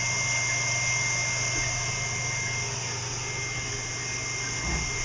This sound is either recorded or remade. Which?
recorded